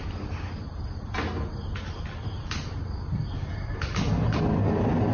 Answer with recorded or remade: recorded